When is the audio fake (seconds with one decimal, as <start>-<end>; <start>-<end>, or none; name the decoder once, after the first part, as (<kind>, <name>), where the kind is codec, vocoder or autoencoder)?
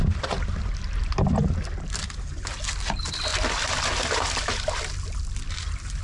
none